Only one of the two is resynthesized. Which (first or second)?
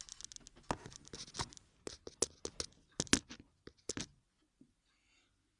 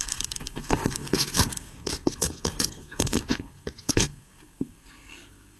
second